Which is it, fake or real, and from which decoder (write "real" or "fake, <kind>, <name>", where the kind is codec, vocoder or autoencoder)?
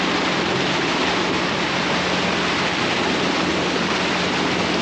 real